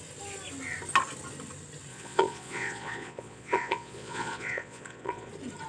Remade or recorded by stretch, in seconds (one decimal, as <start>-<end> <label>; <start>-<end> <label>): 0.0-1.9 recorded; 1.9-5.3 remade; 5.3-5.7 recorded